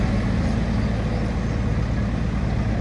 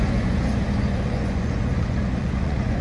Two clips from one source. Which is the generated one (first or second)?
second